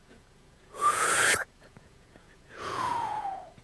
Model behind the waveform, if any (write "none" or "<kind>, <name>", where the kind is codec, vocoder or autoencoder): vocoder, Vocos